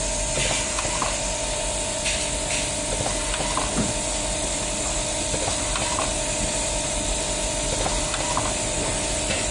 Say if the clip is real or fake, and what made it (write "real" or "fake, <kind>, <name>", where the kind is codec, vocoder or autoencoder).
real